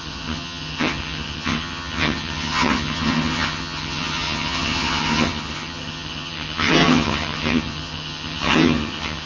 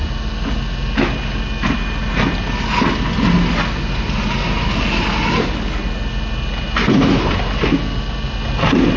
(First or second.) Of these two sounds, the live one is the second